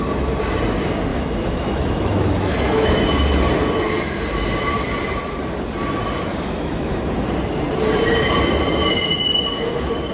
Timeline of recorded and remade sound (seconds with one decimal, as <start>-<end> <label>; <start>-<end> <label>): 0.0-1.1 recorded; 1.1-2.9 remade; 2.9-6.3 recorded; 6.3-6.9 remade; 6.9-10.1 recorded